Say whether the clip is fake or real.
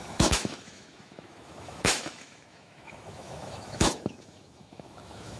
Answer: fake